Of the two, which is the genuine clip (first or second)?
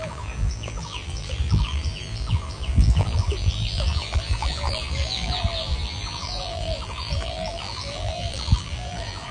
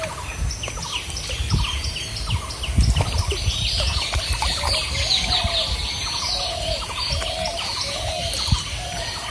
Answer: second